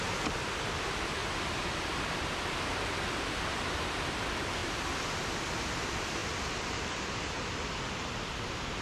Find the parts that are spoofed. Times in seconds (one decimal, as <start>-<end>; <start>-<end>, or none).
6.2-7.1